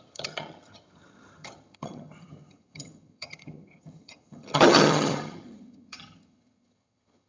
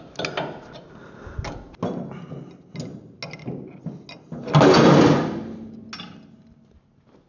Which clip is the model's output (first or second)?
first